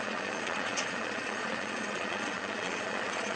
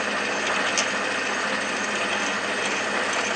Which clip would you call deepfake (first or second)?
first